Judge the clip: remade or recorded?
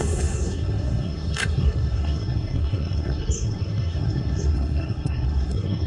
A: remade